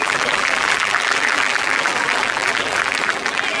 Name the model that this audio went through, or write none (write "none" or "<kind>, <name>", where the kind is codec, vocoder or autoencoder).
vocoder, BigVGAN v2